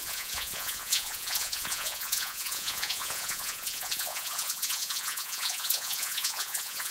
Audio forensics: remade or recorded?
remade